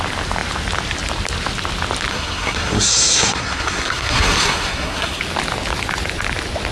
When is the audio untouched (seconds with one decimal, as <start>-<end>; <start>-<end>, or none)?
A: 0.0-2.1; 5.2-6.7